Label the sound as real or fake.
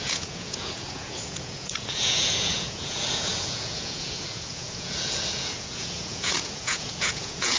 fake